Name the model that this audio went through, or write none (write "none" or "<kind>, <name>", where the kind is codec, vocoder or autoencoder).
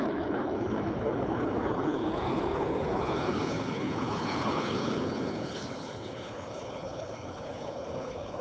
codec, HILCodec